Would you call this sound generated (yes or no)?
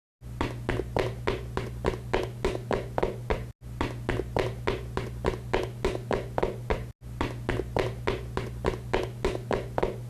no